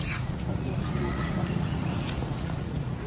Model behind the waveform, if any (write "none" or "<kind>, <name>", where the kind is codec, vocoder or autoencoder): vocoder, Vocos